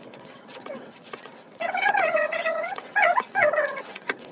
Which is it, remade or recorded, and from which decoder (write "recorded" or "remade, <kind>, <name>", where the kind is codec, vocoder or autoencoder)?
remade, vocoder, WaveNeXt